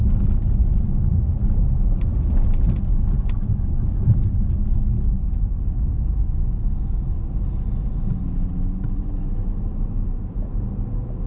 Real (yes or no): yes